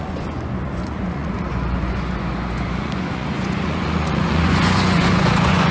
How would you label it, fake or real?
fake